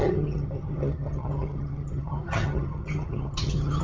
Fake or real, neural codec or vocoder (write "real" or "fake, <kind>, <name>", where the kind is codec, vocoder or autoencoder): fake, vocoder, HiFi-GAN